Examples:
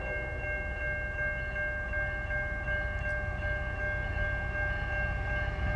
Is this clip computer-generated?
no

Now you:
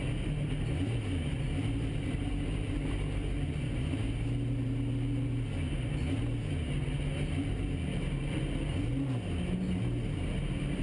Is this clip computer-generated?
no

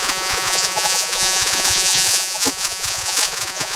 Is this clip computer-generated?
yes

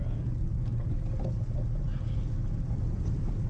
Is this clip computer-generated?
no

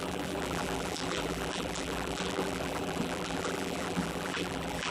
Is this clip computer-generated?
yes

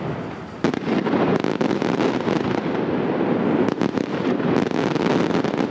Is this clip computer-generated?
no